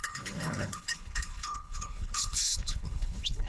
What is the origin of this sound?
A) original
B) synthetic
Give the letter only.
B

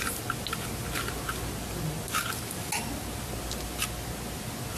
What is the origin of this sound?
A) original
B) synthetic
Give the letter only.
A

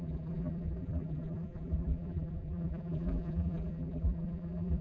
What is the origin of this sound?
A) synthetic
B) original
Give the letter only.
A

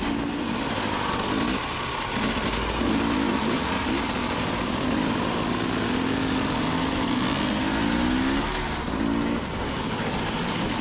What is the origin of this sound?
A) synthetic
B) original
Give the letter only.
B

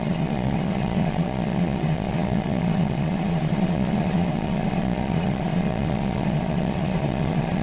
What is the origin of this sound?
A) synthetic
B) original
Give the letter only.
A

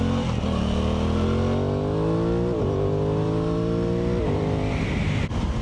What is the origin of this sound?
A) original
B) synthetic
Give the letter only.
A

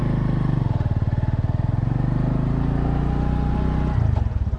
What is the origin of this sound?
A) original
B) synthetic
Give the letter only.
A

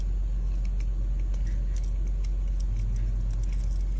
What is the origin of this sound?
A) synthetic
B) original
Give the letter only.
B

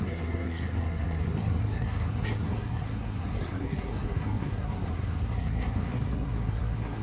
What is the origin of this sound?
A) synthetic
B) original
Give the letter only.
A